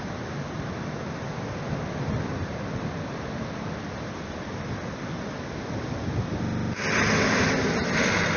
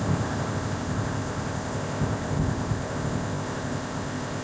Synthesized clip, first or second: second